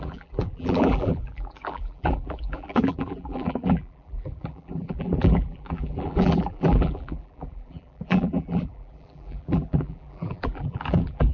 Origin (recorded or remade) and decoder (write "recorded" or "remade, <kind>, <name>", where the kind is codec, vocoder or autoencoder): remade, vocoder, BigVGAN v2